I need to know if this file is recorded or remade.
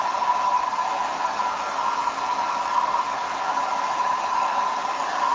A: recorded